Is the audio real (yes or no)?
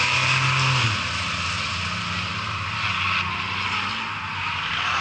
yes